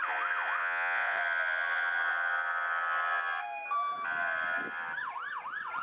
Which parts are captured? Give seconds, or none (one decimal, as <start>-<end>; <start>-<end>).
0.0-0.6; 1.2-5.8